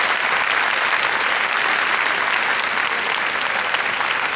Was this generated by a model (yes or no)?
no